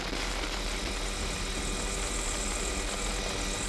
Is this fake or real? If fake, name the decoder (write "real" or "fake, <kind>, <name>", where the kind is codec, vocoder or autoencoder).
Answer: real